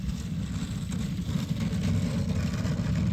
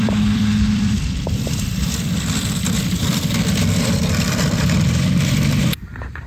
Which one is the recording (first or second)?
first